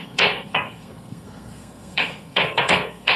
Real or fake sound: fake